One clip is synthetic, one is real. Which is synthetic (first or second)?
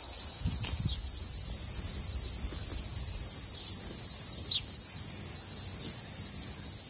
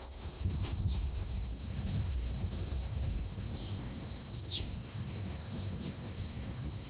second